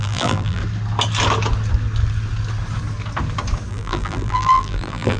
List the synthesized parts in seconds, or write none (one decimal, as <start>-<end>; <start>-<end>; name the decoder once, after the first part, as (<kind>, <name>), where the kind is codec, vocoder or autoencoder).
0.0-0.6 (vocoder, BigVGAN v2); 3.7-5.2